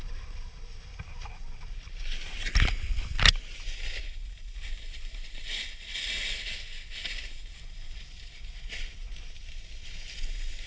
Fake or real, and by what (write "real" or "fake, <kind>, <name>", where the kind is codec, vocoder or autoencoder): real